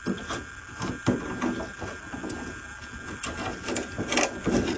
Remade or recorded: recorded